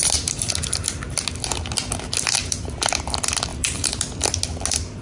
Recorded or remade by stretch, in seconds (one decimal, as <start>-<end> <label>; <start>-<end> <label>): 0.0-3.5 recorded; 3.5-4.0 remade; 4.0-5.0 recorded